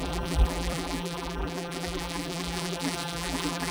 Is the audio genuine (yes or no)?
no